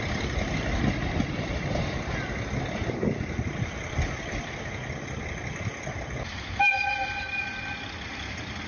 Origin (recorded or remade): recorded